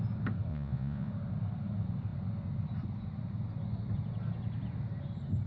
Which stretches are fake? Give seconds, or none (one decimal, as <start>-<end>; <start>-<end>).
0.5-1.1